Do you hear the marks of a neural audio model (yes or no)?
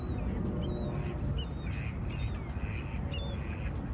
no